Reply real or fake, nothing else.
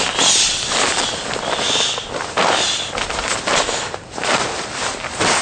real